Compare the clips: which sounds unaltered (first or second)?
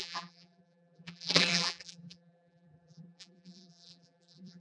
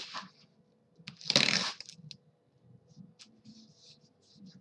second